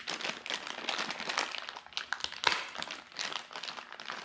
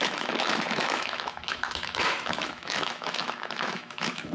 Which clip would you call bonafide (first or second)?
first